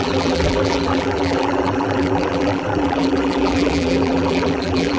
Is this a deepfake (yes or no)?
yes